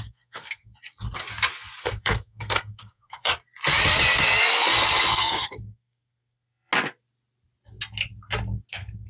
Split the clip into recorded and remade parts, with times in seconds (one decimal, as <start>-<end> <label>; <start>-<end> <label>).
0.0-0.7 remade; 0.7-1.8 recorded; 1.8-3.3 remade; 3.3-5.2 recorded; 5.2-6.7 remade; 6.7-8.7 recorded; 8.7-9.1 remade